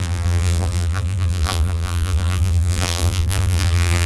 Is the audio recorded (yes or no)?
no